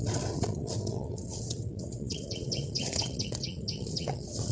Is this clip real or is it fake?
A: fake